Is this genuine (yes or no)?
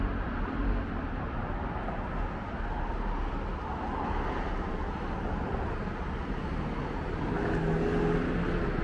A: yes